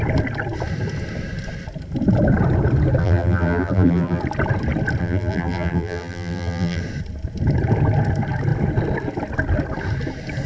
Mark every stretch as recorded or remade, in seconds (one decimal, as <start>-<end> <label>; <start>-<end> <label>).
0.0-3.0 recorded; 3.0-4.2 remade; 4.2-5.0 recorded; 5.0-6.8 remade; 6.8-10.5 recorded